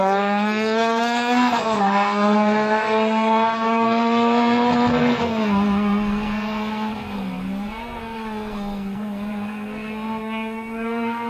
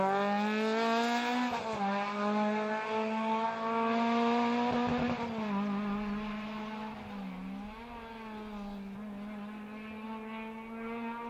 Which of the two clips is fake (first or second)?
first